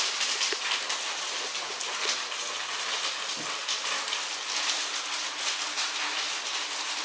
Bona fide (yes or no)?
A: yes